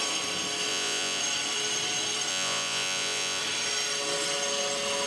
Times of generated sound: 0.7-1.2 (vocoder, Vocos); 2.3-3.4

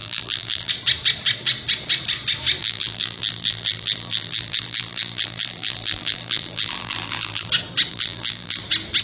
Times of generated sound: 0.0-0.7 (vocoder, BigVGAN v2); 2.6-7.5; 7.9-8.6

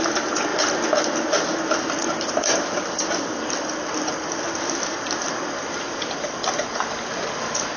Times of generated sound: 0.0-0.5 (vocoder, BigVGAN v2); 1.0-6.4